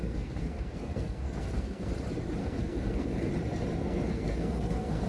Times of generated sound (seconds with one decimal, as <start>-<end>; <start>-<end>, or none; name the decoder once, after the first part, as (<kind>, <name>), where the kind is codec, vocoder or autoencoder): 0.0-1.9 (codec, SNAC); 2.4-3.3; 3.8-5.1